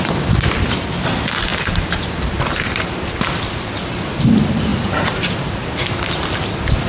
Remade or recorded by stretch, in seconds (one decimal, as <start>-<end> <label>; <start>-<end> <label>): 0.0-1.5 recorded; 1.5-3.7 remade; 3.7-4.7 recorded; 4.7-6.1 remade; 6.1-6.9 recorded